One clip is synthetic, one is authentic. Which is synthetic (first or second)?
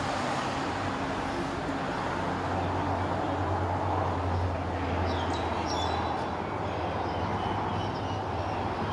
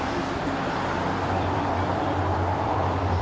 second